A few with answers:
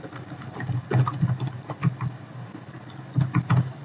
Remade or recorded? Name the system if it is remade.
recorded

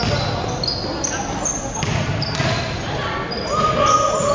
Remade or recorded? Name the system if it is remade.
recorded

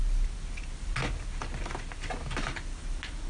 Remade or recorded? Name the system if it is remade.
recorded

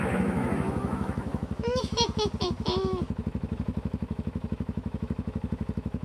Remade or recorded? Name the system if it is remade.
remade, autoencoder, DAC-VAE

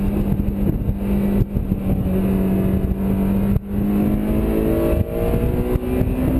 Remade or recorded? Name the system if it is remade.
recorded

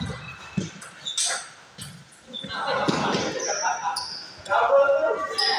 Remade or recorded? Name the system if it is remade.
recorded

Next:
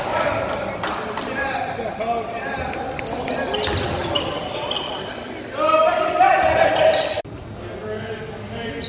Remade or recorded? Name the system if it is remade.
recorded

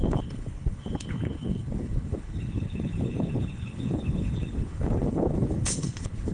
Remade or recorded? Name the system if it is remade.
remade, codec, HILCodec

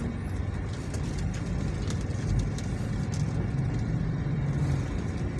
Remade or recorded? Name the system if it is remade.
recorded